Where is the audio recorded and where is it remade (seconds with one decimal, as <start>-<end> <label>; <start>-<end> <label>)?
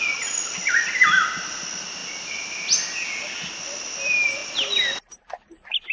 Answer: 0.0-5.9 recorded